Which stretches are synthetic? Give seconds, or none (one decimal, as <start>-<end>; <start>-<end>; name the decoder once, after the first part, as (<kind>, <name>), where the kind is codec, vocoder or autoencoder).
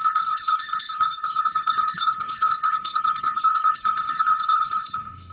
0.0-5.3 (codec, HILCodec)